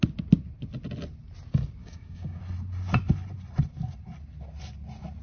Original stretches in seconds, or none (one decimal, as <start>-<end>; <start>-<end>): 0.0-1.8; 2.4-5.2